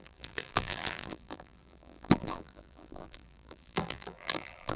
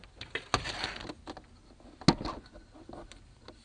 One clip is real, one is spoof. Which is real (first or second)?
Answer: second